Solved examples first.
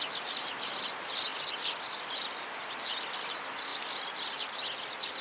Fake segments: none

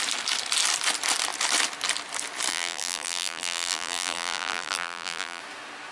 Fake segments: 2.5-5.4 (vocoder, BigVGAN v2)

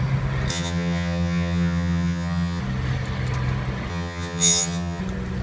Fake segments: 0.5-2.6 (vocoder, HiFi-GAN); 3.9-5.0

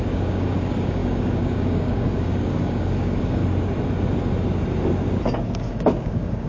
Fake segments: 0.0-3.4 (codec, DAC); 5.7-6.5

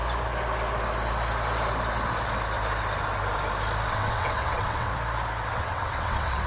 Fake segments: 3.9-4.9 (vocoder, WaveNeXt); 5.5-6.5